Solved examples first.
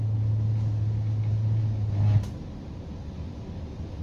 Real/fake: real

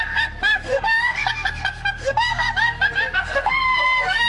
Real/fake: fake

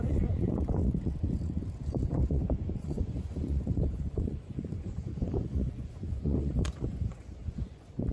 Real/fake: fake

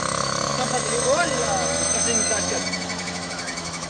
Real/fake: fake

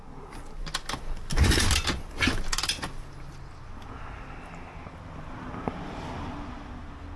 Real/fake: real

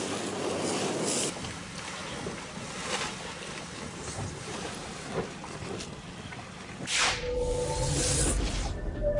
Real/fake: real